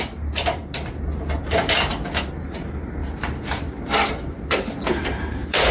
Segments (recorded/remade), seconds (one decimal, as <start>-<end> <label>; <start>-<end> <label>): 0.0-0.6 remade; 0.6-1.4 recorded; 1.4-1.9 remade; 1.9-2.4 recorded; 2.4-5.7 remade